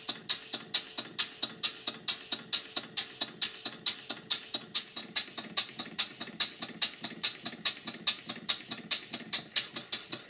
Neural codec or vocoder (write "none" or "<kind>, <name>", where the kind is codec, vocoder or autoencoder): none